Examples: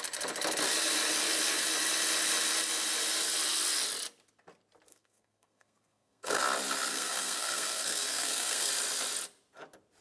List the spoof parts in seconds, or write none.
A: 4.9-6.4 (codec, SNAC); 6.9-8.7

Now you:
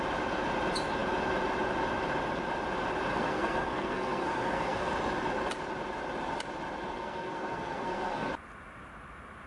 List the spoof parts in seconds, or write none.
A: 3.1-4.9 (codec, SNAC); 6.9-8.3

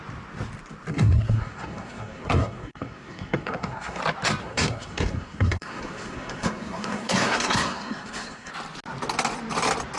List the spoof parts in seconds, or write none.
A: 0.9-4.0 (codec, SNAC); 4.4-8.5

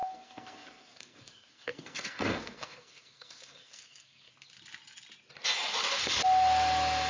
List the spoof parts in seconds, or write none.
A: 0.0-4.3 (codec, SNAC)

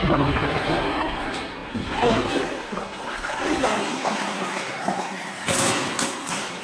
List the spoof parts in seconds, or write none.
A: 0.0-6.6 (codec, SNAC)

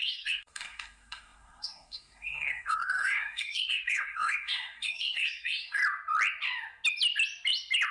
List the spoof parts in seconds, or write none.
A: 0.0-5.8 (codec, SNAC)